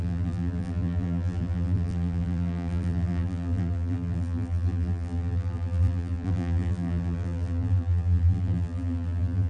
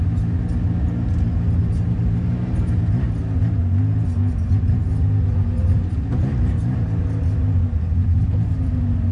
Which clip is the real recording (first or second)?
second